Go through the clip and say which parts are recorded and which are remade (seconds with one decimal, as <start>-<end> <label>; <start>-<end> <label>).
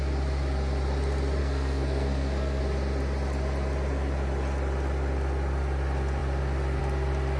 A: 0.0-1.4 recorded; 1.4-2.6 remade; 2.6-7.4 recorded